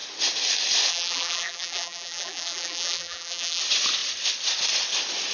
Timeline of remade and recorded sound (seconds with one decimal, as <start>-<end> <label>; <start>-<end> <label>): 0.0-0.9 recorded; 0.9-3.6 remade; 3.6-5.3 recorded